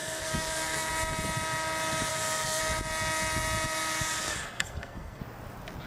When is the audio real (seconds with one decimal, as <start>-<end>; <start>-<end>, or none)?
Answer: 0.9-2.1; 2.6-4.2; 5.2-5.9

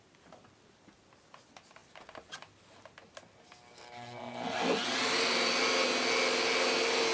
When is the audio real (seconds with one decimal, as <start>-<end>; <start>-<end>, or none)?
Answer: 0.0-7.1

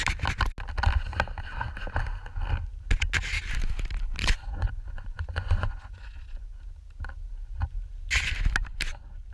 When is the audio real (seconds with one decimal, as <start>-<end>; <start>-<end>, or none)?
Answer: 0.0-4.2; 6.6-9.3

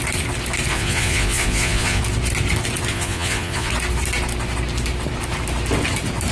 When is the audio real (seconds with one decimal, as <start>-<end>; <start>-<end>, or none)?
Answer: 0.0-0.7; 2.0-2.9; 3.7-6.3

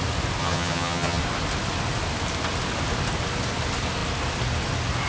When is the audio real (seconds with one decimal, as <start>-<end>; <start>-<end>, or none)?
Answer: 0.0-0.4; 1.2-5.1

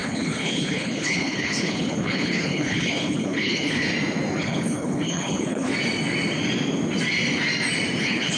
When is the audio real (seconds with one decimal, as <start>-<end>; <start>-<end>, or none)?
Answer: 3.9-4.4; 5.7-8.0